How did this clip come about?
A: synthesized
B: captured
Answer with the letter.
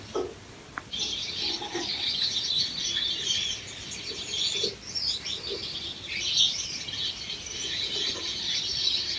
B